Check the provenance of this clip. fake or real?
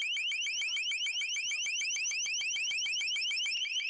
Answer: real